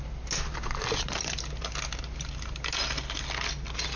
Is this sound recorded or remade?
recorded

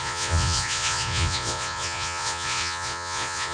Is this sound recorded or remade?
remade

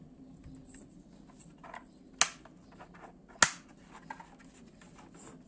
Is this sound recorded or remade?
recorded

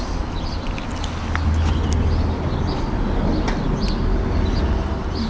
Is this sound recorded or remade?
recorded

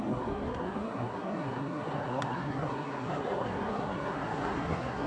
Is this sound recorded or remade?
remade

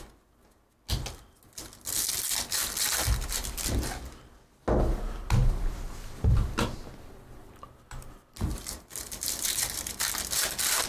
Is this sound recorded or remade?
recorded